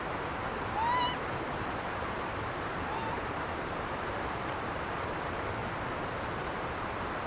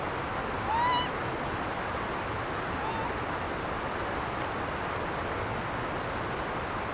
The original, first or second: second